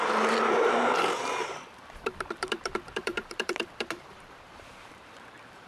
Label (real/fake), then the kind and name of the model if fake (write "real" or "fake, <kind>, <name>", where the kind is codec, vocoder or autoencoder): fake, vocoder, BigVGAN v2